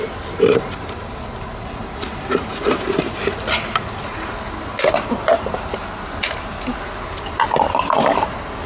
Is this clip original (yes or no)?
yes